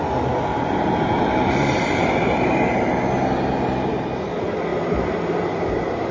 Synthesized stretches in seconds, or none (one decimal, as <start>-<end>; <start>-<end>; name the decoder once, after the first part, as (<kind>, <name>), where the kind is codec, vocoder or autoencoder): 0.5-4.2 (vocoder, BigVGAN v2)

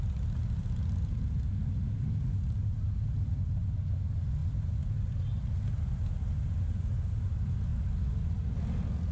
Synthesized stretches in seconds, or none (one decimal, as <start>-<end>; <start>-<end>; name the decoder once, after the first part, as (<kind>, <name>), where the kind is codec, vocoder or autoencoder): none

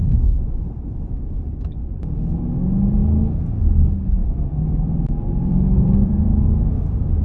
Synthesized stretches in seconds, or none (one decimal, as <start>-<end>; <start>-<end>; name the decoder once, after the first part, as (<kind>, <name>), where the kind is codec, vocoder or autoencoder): 0.0-1.0 (vocoder, BigVGAN v2); 4.2-6.7

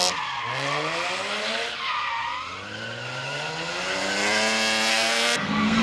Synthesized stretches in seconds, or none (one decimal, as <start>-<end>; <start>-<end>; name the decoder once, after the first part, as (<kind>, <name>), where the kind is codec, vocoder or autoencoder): 4.9-5.8 (codec, SNAC)

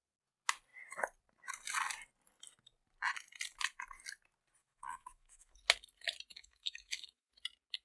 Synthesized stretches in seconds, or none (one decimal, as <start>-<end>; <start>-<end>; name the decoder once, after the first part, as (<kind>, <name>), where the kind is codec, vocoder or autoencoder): 4.6-5.6 (autoencoder, DAC-VAE); 6.3-7.3